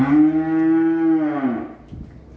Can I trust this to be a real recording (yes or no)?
yes